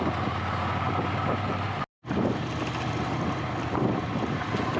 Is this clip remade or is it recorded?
recorded